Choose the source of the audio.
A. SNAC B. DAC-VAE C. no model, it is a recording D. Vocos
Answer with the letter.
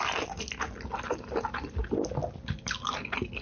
C